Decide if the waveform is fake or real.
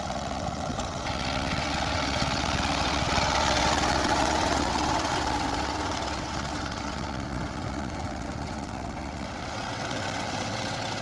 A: fake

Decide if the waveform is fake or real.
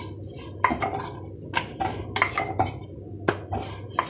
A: real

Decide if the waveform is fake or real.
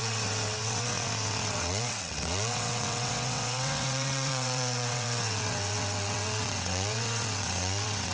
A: fake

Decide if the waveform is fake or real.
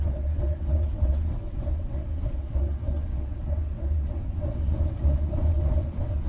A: fake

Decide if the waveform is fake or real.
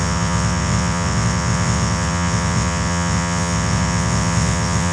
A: fake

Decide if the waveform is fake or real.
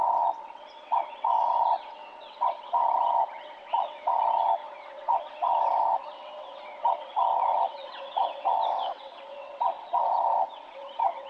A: fake